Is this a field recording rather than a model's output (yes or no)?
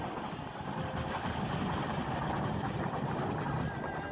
yes